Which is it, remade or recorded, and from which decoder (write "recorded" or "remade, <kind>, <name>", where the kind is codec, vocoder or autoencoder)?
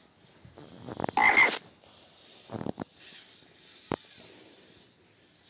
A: recorded